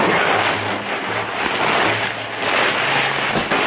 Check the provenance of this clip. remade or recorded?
recorded